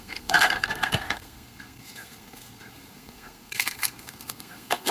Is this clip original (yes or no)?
no